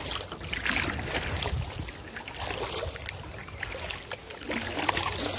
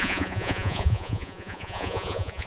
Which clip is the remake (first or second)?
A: second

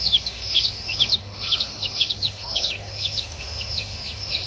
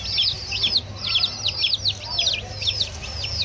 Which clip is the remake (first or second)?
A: first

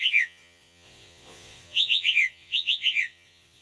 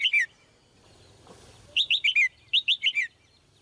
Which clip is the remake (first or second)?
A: first